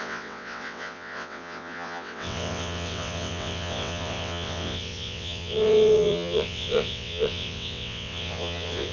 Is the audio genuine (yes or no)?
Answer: no